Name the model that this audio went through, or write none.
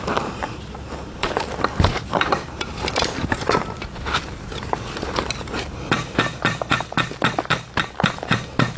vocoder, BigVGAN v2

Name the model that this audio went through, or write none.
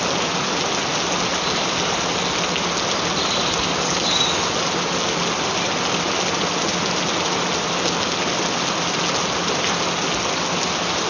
none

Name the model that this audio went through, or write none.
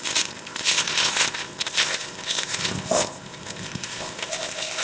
codec, ZipCodec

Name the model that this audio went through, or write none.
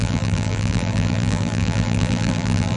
vocoder, BigVGAN v2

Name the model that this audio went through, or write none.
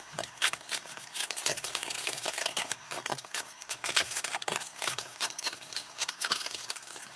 codec, SNAC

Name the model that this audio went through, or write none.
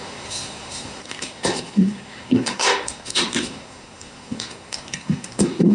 codec, SNAC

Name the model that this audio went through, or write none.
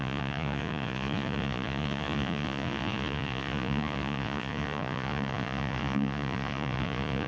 vocoder, Vocos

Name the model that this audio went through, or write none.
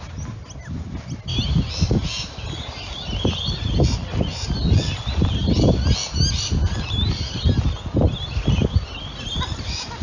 none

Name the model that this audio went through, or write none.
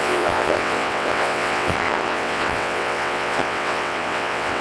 vocoder, WaveNeXt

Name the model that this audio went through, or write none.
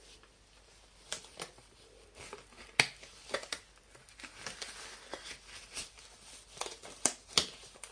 none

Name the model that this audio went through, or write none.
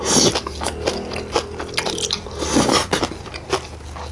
none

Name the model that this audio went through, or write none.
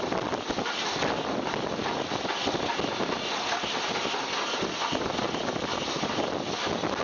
none